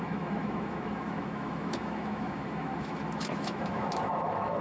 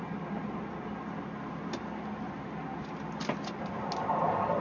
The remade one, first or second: first